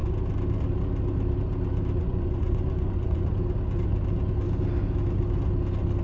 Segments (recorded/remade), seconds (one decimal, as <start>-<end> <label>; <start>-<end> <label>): 0.0-2.0 recorded; 2.0-3.3 remade; 3.3-6.0 recorded